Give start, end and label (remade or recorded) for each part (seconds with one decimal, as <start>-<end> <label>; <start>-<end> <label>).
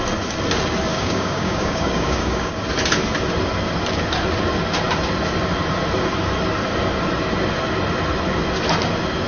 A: 0.0-0.9 recorded; 0.9-2.5 remade; 2.5-9.3 recorded